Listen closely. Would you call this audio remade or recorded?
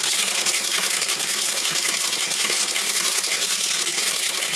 remade